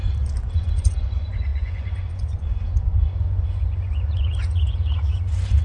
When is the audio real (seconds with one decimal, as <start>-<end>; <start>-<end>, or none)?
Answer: 0.0-0.5